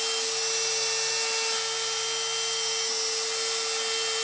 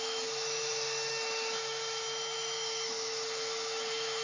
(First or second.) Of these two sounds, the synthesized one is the second